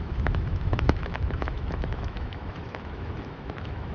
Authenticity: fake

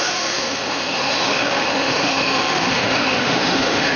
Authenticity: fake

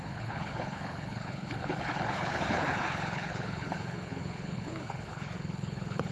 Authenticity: fake